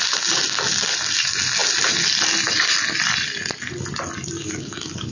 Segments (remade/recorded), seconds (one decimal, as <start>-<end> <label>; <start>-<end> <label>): 0.0-4.4 recorded; 4.4-5.1 remade